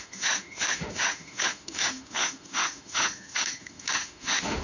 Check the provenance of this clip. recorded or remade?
remade